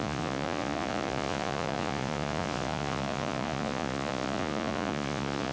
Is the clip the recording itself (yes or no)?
no